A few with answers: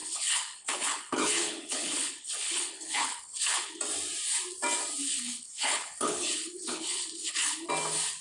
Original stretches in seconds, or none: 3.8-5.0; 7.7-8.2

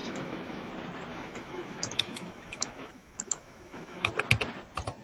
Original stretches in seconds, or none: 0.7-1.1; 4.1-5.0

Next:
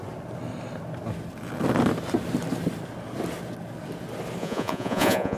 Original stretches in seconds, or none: 0.0-4.4

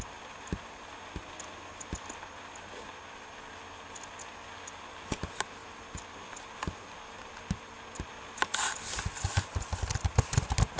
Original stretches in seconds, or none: 0.0-10.8